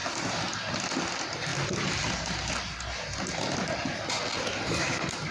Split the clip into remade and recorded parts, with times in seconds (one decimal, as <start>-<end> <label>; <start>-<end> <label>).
0.0-1.1 recorded; 1.1-1.5 remade; 1.5-4.7 recorded; 4.7-5.3 remade